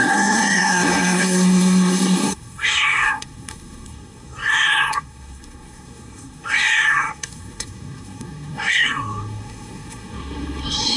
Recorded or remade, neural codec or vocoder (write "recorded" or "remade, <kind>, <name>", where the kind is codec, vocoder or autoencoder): remade, codec, SNAC